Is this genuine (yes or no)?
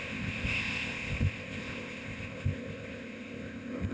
no